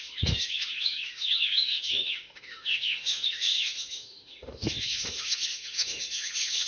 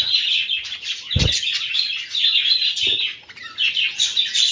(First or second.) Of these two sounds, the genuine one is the second